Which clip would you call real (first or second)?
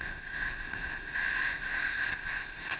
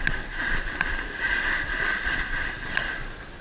second